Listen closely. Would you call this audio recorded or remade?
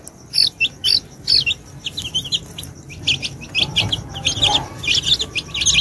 recorded